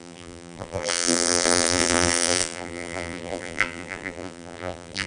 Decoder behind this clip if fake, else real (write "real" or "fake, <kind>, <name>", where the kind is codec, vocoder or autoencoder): fake, vocoder, BigVGAN v2